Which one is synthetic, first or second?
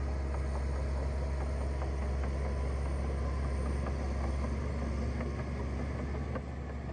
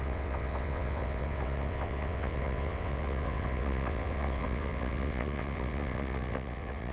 second